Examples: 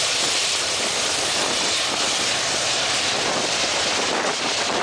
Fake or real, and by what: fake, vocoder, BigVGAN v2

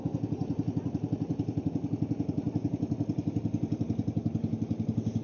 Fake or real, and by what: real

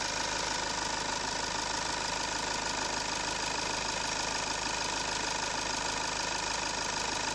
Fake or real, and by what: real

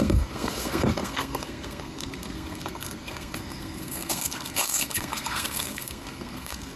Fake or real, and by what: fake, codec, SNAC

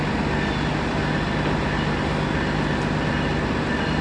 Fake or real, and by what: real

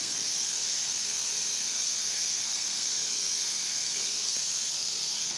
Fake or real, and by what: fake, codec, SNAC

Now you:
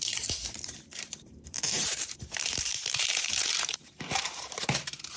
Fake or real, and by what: fake, vocoder, BigVGAN v2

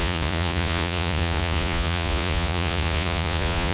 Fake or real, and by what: fake, vocoder, Vocos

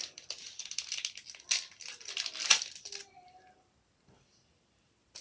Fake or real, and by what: real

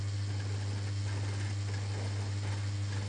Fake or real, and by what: real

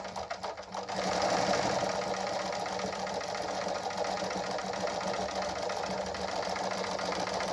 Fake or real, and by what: real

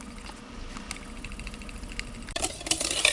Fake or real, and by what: real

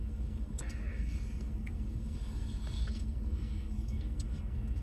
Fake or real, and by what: fake, codec, SNAC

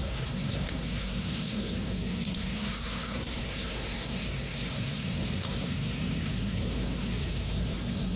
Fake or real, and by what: fake, codec, SNAC